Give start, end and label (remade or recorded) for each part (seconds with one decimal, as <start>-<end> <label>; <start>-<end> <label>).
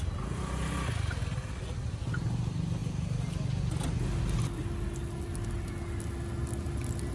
0.0-7.1 recorded